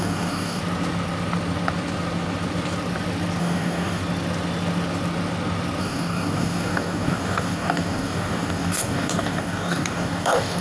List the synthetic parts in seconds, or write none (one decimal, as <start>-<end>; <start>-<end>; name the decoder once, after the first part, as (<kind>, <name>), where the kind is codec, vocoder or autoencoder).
0.0-0.6 (codec, DAC); 3.4-4.0; 5.8-10.6